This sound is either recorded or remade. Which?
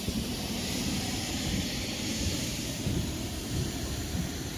remade